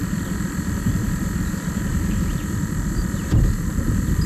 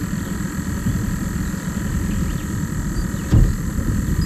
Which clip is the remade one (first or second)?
first